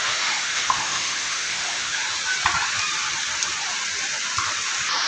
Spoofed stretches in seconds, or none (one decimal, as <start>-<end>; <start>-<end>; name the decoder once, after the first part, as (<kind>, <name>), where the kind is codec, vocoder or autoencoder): 0.0-2.0 (autoencoder, DAC-VAE)